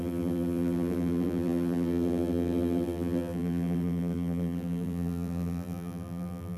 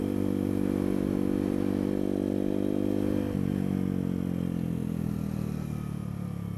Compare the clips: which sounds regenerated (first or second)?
first